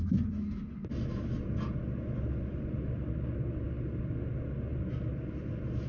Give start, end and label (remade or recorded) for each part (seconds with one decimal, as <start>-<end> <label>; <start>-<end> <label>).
0.0-5.9 recorded